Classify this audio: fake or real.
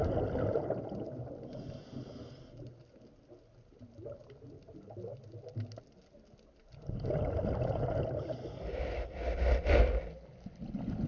real